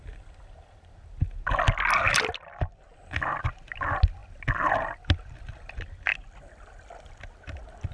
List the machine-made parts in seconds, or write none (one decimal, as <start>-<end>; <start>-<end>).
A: none